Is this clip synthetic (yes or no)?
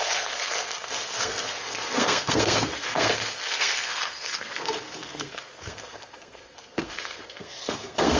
yes